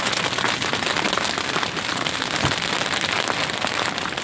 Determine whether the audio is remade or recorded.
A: recorded